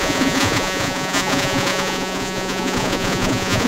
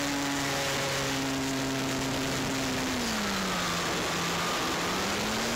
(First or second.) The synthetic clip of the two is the first